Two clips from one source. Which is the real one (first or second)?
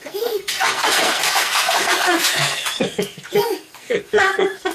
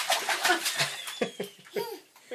second